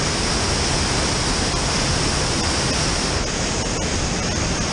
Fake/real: real